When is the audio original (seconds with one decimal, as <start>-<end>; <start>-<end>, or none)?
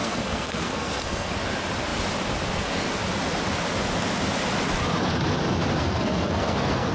1.3-5.7